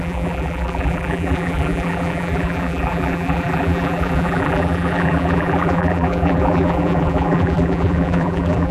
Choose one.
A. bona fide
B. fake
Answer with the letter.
B